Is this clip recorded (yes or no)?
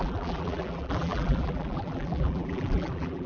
no